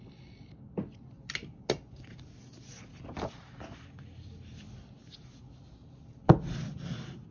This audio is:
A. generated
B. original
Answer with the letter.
B